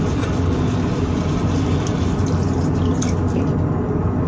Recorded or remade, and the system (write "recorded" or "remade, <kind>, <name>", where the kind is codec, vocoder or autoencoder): recorded